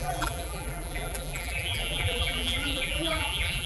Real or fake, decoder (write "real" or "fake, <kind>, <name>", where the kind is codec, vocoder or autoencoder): fake, vocoder, BigVGAN v2